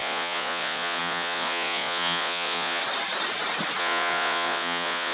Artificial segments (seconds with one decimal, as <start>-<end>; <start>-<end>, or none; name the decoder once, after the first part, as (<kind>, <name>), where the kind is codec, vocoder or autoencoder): 0.0-2.8 (vocoder, Vocos); 3.8-5.1